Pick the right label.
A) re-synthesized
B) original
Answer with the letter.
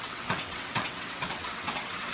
A